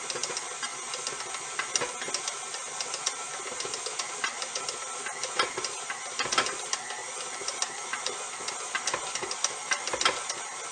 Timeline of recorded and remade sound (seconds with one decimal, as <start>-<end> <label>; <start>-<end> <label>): 0.0-10.7 recorded

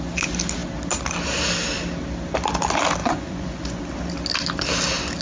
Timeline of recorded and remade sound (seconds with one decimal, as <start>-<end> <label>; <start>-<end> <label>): 0.0-3.0 recorded; 3.0-3.8 remade; 3.8-5.2 recorded

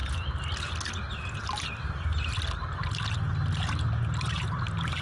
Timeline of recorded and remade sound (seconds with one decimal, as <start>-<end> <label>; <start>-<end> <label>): 0.0-5.0 recorded

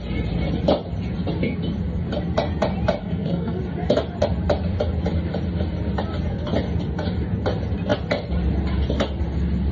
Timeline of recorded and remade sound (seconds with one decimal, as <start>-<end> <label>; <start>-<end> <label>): 0.0-3.0 recorded; 3.0-3.6 remade; 3.6-9.7 recorded

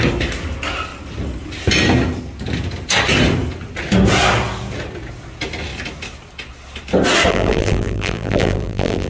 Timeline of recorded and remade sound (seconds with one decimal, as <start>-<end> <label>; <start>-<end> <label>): 0.0-7.3 recorded; 7.3-9.1 remade

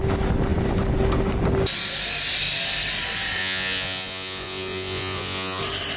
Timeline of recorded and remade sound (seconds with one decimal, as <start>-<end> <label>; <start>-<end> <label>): 0.0-3.4 recorded; 3.4-5.6 remade; 5.6-6.0 recorded

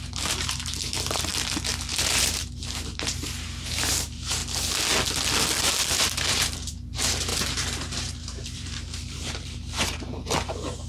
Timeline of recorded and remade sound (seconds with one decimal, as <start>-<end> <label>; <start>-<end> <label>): 0.0-1.3 remade; 1.3-1.9 recorded; 1.9-4.4 remade; 4.4-5.9 recorded; 5.9-10.9 remade